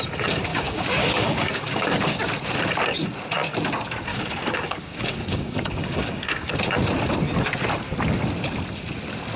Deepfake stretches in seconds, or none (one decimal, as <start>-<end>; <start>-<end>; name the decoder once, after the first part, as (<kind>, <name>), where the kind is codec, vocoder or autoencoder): 0.5-2.2 (codec, DAC); 4.1-6.5